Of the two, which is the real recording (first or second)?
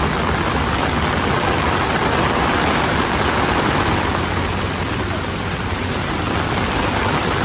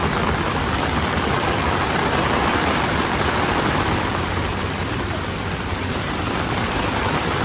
first